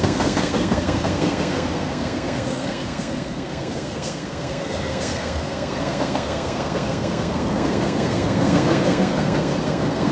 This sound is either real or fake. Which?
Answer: fake